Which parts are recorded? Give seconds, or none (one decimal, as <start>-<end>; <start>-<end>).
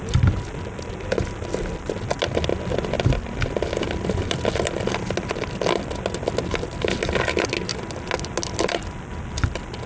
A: 0.0-9.9